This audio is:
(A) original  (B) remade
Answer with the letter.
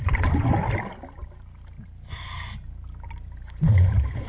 A